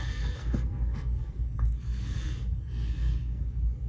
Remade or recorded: remade